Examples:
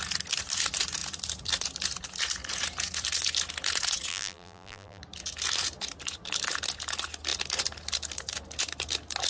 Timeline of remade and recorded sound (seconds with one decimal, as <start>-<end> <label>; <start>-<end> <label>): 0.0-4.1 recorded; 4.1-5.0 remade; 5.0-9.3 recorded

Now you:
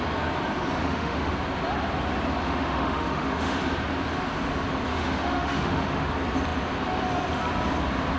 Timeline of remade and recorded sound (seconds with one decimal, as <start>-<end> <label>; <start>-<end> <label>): 0.0-0.8 recorded; 0.8-1.3 remade; 1.3-2.4 recorded; 2.4-3.6 remade; 3.6-4.9 recorded; 4.9-6.1 remade; 6.1-8.2 recorded

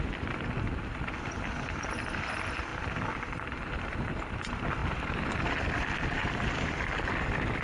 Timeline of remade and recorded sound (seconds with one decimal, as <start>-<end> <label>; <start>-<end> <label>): 0.0-4.8 remade; 4.8-6.3 recorded; 6.3-7.6 remade

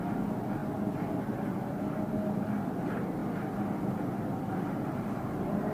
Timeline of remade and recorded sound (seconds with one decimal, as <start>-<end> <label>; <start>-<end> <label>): 0.0-5.7 recorded